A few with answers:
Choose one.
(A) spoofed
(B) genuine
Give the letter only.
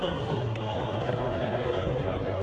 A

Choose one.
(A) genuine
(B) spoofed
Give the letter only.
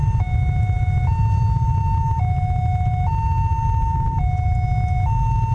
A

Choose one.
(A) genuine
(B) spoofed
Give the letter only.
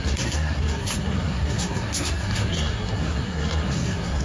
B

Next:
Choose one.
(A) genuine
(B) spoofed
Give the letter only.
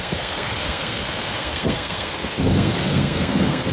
B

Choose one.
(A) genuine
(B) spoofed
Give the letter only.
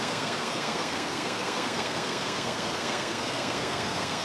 B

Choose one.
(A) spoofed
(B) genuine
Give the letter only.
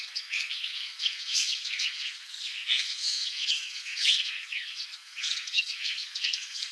A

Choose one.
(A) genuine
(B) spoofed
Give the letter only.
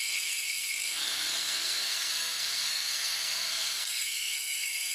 B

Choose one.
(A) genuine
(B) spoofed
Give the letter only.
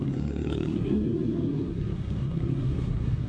B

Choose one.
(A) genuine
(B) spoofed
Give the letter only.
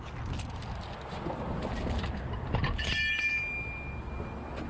A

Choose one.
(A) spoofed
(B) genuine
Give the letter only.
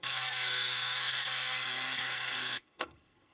A